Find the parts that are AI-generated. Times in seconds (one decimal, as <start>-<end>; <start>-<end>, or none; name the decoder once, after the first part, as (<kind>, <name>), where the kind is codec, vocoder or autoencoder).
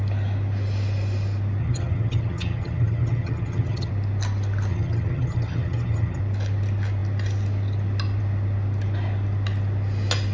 1.6-3.9 (vocoder, HiFi-GAN); 4.7-6.2